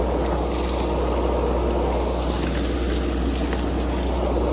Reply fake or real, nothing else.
real